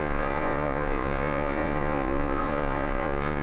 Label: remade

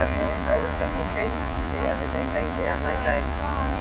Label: remade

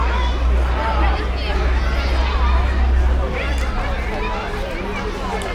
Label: recorded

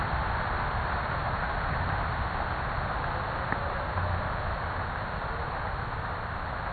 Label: recorded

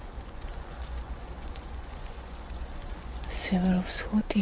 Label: remade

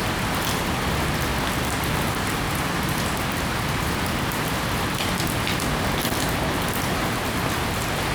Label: recorded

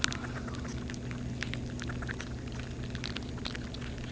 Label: recorded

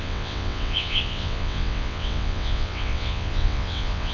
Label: remade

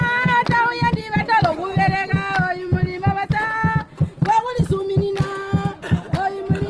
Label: recorded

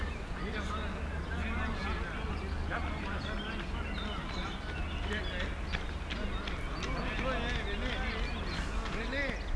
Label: recorded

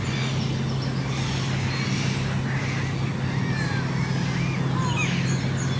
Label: recorded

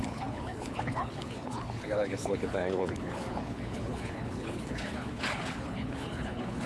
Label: remade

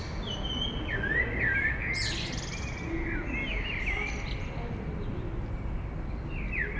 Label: recorded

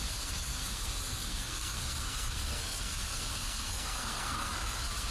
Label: remade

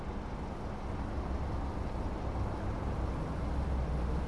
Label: recorded